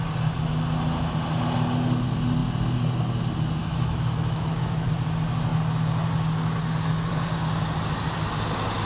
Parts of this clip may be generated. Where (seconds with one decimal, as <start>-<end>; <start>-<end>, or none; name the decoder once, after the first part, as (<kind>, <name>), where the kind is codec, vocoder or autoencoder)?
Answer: 3.6-4.9 (autoencoder, DAC-VAE)